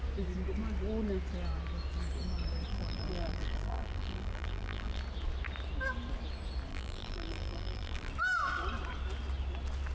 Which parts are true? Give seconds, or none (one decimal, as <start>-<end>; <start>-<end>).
0.0-2.7; 5.0-6.7; 8.1-9.9